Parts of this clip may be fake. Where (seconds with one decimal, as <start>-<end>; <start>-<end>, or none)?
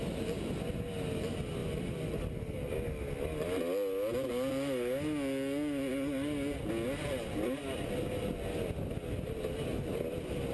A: none